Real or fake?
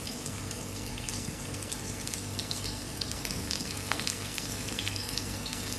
fake